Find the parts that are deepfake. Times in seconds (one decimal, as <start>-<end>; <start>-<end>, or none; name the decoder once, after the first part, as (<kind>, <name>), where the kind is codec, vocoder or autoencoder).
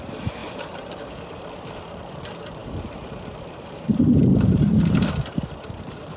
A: 0.0-0.4 (vocoder, BigVGAN v2); 2.1-6.2